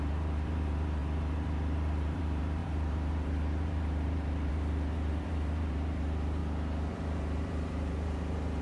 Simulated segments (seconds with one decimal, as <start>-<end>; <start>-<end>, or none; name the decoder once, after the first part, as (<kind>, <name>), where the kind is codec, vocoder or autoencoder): 0.0-6.4 (vocoder, BigVGAN v2); 6.9-8.6